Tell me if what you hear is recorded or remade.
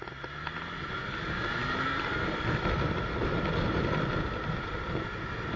recorded